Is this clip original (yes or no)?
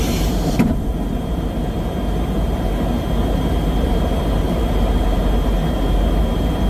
no